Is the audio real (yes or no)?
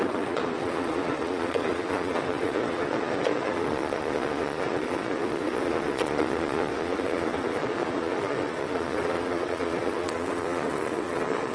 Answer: no